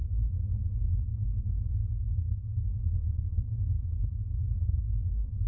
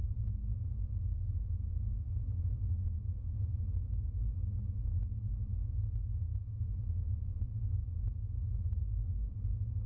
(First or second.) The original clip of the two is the second